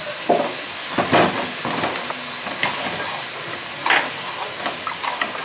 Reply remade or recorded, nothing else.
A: recorded